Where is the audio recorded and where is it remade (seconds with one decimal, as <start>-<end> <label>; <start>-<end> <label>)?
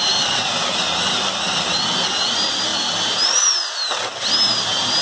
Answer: 0.0-5.0 recorded